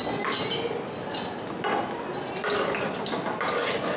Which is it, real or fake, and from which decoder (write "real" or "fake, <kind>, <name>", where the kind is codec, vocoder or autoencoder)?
real